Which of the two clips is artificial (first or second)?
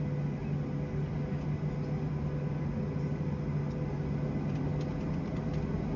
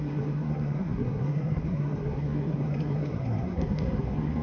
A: second